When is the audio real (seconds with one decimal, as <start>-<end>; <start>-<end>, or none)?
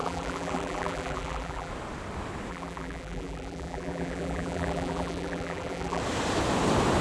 1.7-2.5; 6.0-7.0